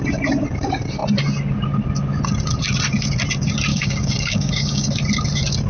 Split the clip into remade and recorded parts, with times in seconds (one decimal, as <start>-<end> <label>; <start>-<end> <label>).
0.0-3.7 recorded; 3.7-4.9 remade; 4.9-5.7 recorded